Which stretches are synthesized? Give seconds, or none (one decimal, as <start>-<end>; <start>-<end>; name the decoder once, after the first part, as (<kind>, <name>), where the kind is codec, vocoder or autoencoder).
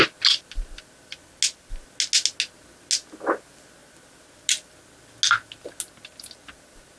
none